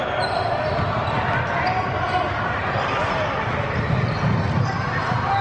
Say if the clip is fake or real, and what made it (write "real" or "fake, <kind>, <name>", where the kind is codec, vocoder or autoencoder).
real